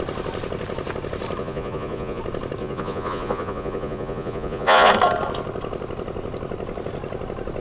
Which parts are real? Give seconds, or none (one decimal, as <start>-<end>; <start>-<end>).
0.0-1.4; 2.2-2.6; 4.9-7.6